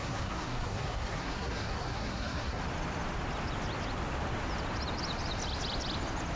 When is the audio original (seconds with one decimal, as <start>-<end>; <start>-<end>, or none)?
2.6-6.4